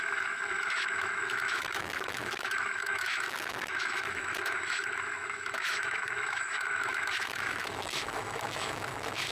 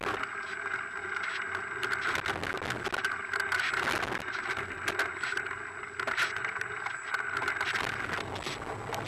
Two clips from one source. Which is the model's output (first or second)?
first